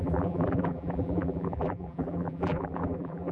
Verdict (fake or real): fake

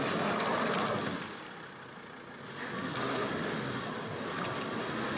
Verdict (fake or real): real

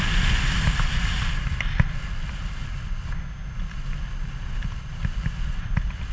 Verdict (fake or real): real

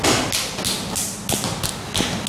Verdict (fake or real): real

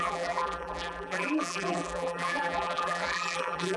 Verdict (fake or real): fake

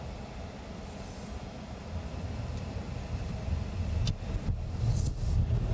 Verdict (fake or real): real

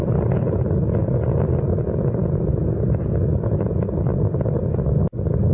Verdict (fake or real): real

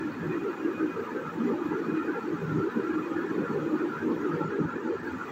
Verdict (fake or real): real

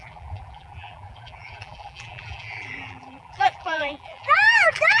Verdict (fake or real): fake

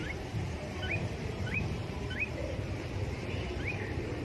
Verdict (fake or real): fake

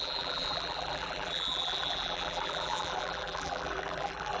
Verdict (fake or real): fake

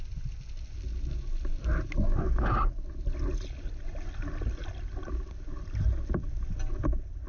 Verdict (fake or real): real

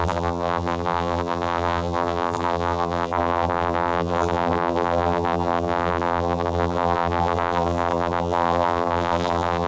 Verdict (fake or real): fake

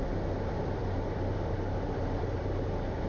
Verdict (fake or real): fake